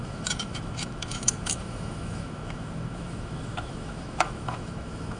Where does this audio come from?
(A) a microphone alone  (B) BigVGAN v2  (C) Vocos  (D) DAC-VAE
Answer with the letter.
D